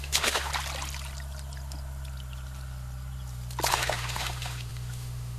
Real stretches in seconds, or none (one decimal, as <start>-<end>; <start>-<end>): 0.5-3.7